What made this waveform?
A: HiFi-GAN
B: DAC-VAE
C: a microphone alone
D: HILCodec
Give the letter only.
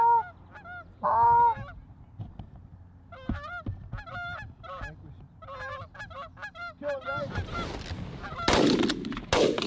C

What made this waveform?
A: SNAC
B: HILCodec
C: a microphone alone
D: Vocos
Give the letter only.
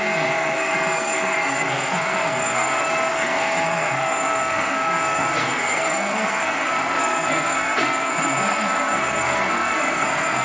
A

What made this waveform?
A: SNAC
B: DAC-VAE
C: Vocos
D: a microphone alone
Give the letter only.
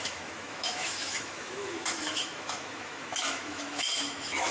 B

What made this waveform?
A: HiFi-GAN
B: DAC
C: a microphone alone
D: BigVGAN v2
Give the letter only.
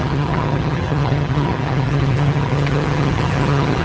A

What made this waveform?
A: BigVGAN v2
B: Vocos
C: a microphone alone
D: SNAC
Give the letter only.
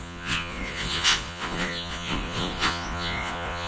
B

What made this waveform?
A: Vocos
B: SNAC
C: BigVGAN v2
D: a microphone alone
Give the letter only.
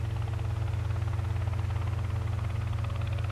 D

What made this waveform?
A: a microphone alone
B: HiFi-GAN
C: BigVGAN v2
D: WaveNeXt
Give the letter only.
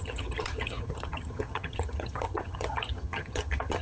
B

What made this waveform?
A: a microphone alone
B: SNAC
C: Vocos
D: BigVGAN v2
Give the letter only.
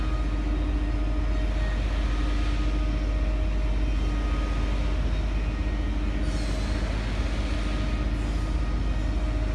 A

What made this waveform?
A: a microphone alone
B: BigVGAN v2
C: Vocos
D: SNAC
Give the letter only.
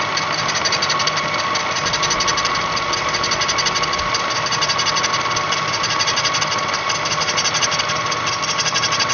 A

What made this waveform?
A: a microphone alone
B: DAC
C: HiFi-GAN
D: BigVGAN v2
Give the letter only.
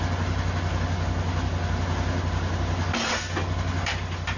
A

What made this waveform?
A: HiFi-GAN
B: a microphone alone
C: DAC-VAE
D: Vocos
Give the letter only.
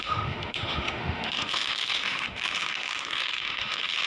C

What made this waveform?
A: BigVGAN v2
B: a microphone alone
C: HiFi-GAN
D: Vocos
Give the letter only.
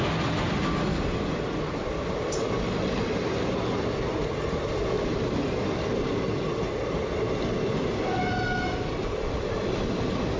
B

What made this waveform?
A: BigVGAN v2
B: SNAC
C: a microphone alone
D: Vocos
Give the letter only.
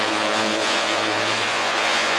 D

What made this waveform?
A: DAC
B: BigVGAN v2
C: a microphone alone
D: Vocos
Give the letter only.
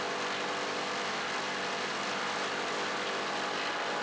C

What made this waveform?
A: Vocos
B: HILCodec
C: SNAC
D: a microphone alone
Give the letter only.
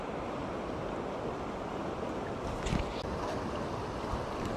D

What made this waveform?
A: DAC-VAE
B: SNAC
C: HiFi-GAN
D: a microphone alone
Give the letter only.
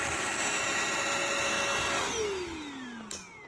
D